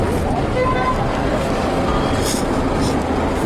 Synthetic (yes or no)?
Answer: no